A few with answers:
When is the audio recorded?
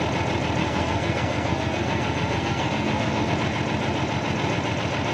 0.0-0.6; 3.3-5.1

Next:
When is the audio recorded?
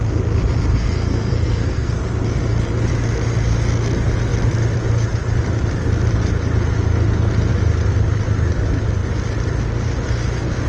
0.0-0.7; 1.9-10.7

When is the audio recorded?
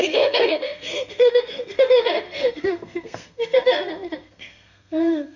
none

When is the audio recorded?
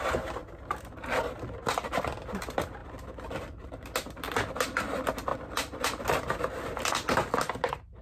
0.0-0.4; 1.5-2.8; 3.8-5.3; 6.0-8.0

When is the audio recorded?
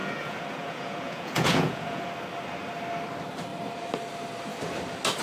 2.1-5.2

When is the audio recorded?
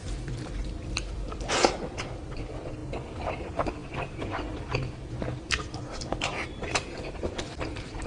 2.8-3.4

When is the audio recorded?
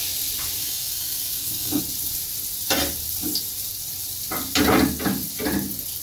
0.0-0.6; 1.8-6.0